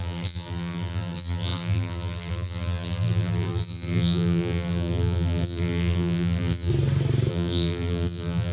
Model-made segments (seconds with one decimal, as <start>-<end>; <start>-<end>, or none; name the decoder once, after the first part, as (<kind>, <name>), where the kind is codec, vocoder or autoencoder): 0.0-6.7 (vocoder, BigVGAN v2); 7.3-8.5